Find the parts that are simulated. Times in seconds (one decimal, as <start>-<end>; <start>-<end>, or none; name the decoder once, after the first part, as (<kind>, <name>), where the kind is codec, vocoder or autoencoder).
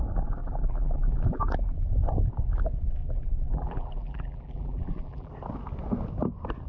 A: 0.4-1.4 (vocoder, BigVGAN v2); 3.0-5.3